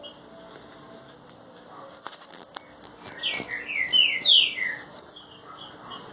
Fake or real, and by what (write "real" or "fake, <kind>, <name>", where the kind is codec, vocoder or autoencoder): real